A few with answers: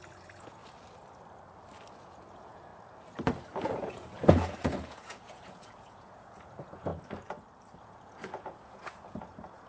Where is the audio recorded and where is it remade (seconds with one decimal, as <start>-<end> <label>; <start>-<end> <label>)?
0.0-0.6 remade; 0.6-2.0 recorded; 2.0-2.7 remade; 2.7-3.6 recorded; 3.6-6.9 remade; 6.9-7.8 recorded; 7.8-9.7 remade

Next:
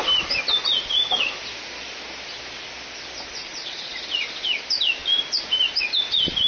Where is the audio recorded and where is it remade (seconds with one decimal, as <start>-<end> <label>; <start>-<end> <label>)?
0.0-3.4 recorded; 3.4-4.0 remade; 4.0-6.5 recorded

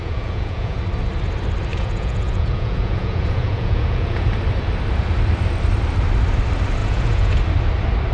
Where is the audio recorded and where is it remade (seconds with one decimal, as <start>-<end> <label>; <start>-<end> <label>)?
0.0-0.8 remade; 0.8-1.7 recorded; 1.7-4.3 remade; 4.3-6.8 recorded; 6.8-7.4 remade; 7.4-8.1 recorded

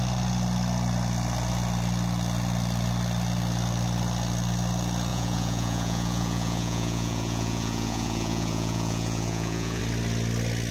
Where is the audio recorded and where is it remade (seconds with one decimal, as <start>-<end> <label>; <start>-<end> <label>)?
0.0-5.1 recorded; 5.1-9.8 remade; 9.8-10.7 recorded

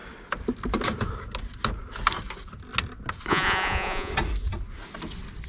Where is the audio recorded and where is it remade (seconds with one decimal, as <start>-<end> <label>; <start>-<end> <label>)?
0.0-3.3 recorded; 3.3-4.1 remade; 4.1-5.5 recorded